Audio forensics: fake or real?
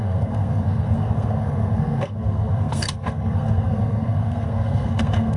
fake